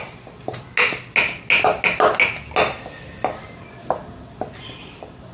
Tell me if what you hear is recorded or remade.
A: recorded